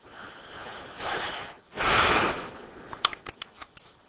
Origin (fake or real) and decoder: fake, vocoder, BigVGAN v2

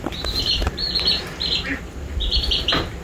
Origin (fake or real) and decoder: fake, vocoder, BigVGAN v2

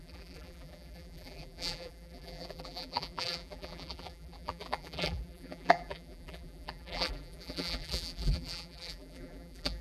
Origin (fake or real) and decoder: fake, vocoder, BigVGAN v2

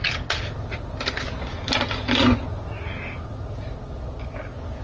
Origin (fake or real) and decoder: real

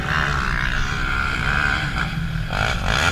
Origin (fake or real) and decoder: real